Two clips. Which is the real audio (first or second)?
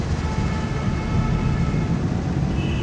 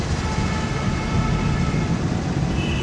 first